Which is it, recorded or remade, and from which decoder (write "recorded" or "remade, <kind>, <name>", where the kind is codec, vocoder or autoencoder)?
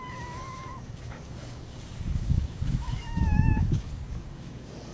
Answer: remade, codec, DAC